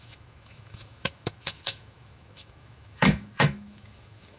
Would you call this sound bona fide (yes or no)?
no